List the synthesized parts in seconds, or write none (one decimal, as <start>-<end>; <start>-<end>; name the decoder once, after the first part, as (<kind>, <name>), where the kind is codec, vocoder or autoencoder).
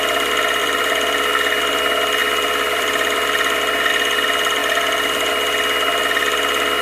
0.6-1.3 (vocoder, BigVGAN v2); 2.2-3.9